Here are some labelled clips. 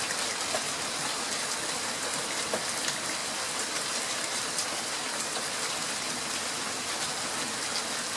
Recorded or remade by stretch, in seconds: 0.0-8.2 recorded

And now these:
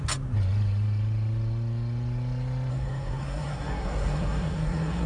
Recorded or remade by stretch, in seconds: 0.0-2.7 recorded; 2.7-5.1 remade